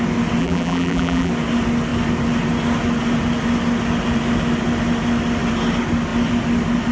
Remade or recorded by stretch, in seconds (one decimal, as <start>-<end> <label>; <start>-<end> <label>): 0.0-0.4 recorded; 0.4-1.3 remade; 1.3-6.9 recorded